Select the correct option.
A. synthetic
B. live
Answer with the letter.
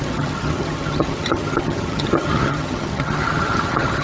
A